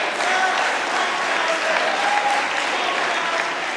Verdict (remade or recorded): recorded